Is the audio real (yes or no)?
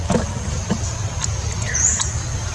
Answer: yes